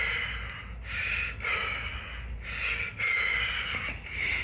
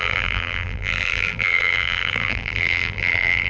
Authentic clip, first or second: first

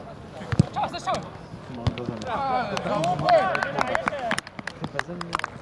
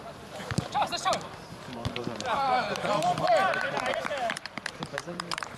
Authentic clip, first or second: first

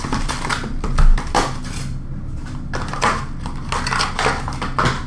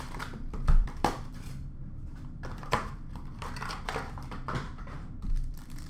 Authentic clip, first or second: first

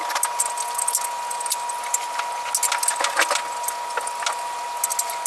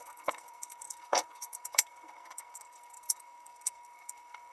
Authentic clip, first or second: first